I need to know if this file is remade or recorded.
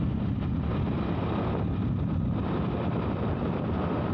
recorded